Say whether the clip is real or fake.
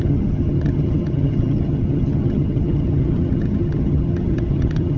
fake